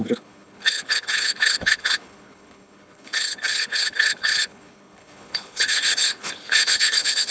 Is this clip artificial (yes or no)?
yes